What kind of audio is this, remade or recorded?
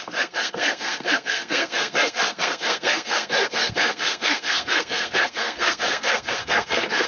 remade